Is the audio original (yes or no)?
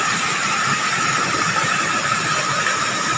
yes